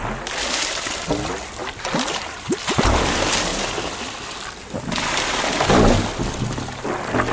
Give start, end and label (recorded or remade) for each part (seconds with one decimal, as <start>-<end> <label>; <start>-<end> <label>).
0.0-1.6 recorded; 1.6-3.1 remade; 3.1-3.5 recorded; 3.5-4.0 remade; 4.0-7.3 recorded